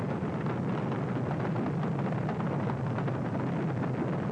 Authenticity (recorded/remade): recorded